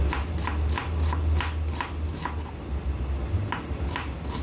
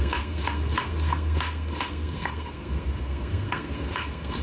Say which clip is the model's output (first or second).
second